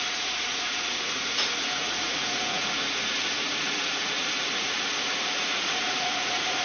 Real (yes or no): no